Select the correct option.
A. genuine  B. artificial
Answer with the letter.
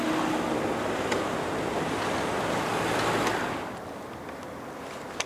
A